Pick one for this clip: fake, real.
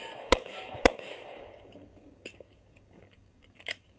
fake